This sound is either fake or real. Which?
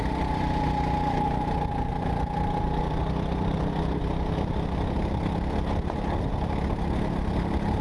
real